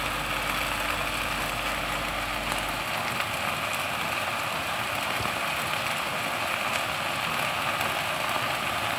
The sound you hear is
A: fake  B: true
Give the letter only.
B